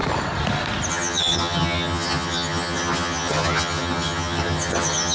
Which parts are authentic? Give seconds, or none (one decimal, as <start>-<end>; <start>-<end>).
0.0-0.9